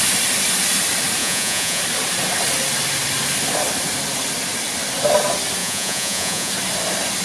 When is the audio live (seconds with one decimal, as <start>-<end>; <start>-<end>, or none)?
0.0-1.2; 1.8-5.6; 6.5-7.2